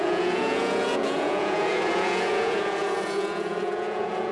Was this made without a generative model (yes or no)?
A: no